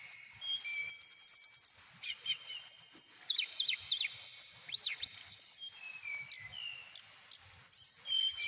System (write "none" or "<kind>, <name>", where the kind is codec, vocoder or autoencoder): none